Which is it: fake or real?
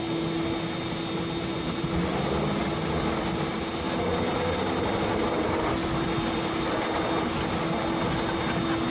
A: real